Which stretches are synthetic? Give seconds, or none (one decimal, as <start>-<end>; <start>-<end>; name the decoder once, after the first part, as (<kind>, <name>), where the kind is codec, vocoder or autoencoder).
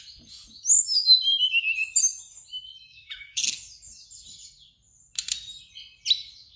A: 2.9-3.4 (autoencoder, DAC-VAE)